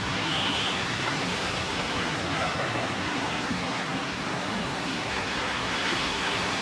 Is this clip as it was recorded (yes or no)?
no